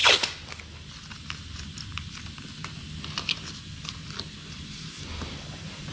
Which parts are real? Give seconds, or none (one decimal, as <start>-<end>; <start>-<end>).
0.0-5.9